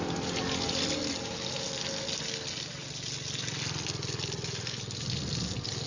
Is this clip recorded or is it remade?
recorded